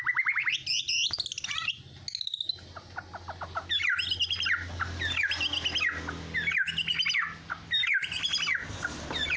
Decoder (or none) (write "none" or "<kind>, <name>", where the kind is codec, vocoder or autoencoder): none